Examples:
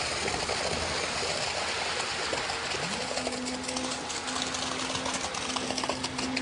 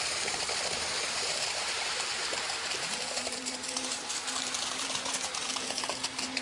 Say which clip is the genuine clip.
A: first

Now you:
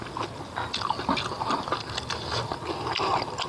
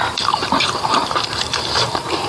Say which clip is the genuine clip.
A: first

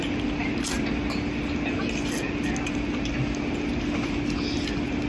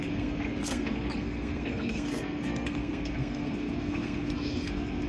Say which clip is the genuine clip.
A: first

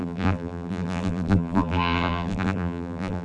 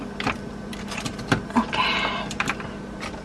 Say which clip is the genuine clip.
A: second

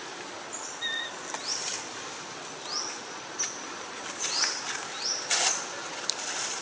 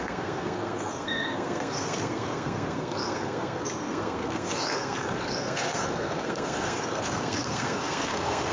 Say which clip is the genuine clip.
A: first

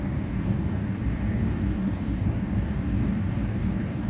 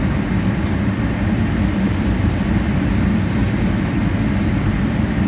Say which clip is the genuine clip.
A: second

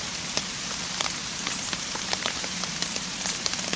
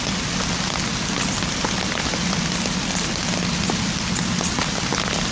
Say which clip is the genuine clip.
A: second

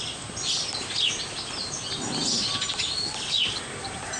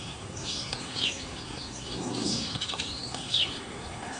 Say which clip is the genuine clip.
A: first